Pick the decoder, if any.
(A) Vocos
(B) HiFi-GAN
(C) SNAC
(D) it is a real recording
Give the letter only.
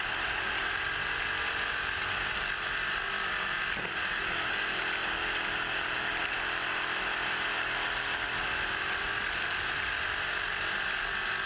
D